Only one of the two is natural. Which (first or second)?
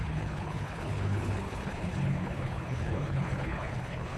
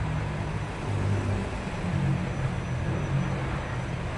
second